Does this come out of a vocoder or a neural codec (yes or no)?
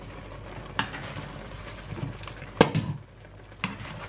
no